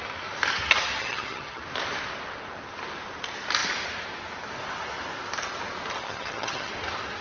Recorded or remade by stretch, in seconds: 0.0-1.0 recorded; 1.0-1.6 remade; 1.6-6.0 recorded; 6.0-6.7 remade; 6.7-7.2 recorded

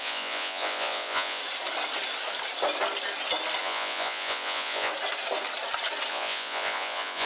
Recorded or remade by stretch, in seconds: 0.0-1.4 remade; 1.4-3.6 recorded; 3.6-4.9 remade; 4.9-6.1 recorded; 6.1-7.3 remade